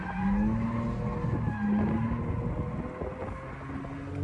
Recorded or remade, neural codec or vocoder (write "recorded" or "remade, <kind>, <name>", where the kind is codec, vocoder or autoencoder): recorded